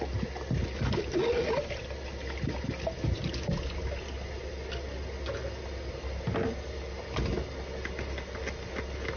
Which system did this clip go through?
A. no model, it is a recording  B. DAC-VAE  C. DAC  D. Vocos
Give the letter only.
A